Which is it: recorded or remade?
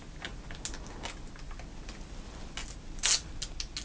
recorded